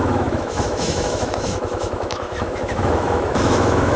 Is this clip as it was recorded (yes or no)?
no